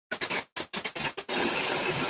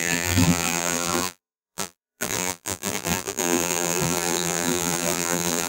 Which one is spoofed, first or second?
second